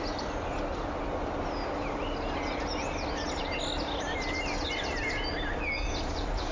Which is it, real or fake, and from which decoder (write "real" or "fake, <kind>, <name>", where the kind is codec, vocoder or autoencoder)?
real